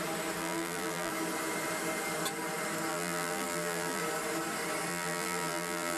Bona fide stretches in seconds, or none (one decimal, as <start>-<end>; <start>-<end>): 0.0-0.4; 1.1-2.9; 4.0-4.9